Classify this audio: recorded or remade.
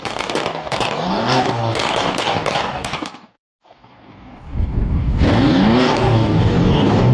remade